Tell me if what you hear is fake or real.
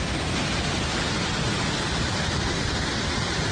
real